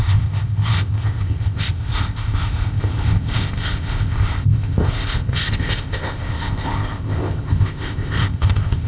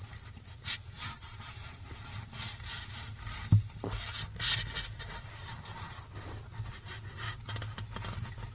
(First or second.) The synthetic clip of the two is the first